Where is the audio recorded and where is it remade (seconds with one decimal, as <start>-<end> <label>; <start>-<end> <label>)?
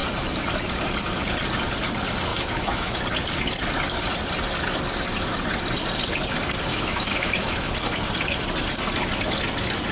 0.0-2.3 recorded; 2.3-3.0 remade; 3.0-6.7 recorded; 6.7-7.7 remade; 7.7-9.9 recorded